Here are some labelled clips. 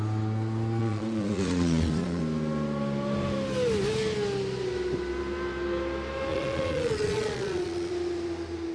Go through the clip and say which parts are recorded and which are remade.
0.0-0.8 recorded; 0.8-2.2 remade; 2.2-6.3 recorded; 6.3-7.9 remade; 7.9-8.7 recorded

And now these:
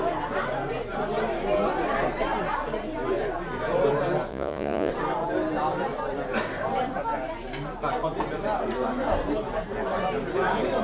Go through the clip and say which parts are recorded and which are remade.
0.0-4.3 recorded; 4.3-4.9 remade; 4.9-10.8 recorded

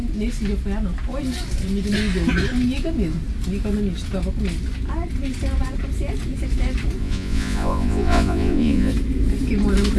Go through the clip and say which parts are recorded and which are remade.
0.0-7.0 recorded; 7.0-8.9 remade; 8.9-10.0 recorded

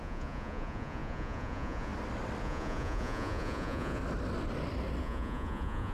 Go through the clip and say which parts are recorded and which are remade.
0.0-1.9 remade; 1.9-2.4 recorded; 2.4-4.0 remade; 4.0-5.0 recorded; 5.0-5.9 remade

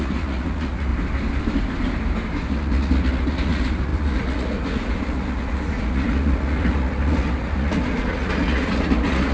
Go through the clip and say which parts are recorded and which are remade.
0.0-0.9 remade; 0.9-2.5 recorded; 2.5-9.3 remade

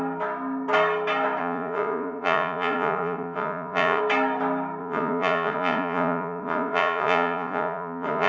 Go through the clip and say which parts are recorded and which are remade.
0.0-1.4 recorded; 1.4-4.0 remade; 4.0-4.8 recorded; 4.8-8.3 remade

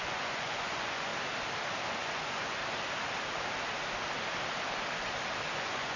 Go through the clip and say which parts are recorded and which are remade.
0.0-1.1 remade; 1.1-1.9 recorded; 1.9-2.6 remade; 2.6-5.5 recorded; 5.5-6.0 remade

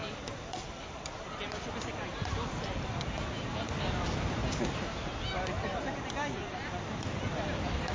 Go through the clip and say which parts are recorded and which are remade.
0.0-7.9 recorded